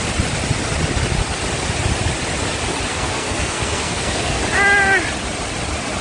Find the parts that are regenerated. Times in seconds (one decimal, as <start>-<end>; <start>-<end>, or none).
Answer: 2.9-4.4